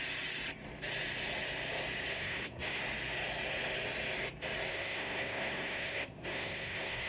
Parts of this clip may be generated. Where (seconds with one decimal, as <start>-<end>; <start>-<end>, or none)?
2.1-2.8; 4.7-7.1